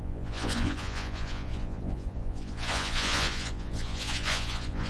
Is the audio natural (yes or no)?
no